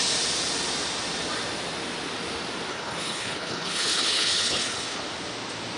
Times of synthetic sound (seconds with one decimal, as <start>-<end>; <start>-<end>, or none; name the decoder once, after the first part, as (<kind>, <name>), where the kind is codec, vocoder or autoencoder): 2.7-5.0 (codec, HILCodec)